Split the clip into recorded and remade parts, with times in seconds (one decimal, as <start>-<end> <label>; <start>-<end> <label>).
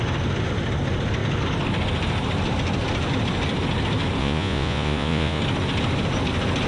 0.0-4.2 recorded; 4.2-5.4 remade; 5.4-6.7 recorded